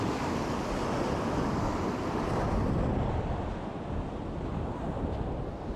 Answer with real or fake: real